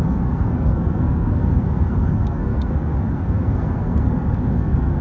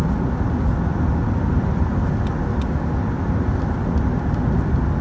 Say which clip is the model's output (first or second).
first